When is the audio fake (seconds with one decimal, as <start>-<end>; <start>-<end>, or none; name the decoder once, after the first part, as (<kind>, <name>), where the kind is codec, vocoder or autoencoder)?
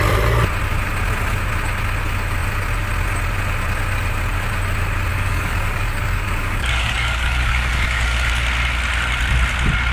5.1-8.3 (codec, DAC)